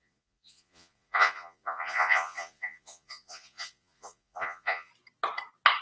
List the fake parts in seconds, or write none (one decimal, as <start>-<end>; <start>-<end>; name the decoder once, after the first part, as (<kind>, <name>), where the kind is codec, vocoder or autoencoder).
0.0-4.9 (vocoder, Vocos)